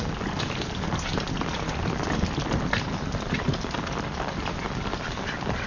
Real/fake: real